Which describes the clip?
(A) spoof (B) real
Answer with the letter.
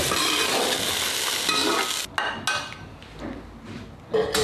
B